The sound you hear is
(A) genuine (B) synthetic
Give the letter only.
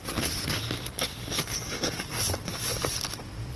A